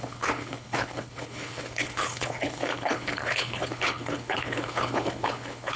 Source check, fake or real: fake